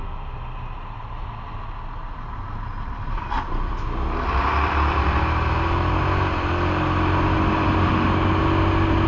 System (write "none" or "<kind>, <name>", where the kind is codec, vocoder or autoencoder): none